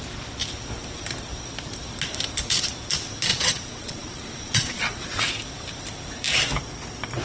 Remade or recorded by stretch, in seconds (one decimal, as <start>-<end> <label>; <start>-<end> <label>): 0.0-3.3 recorded; 3.3-5.2 remade; 5.2-7.2 recorded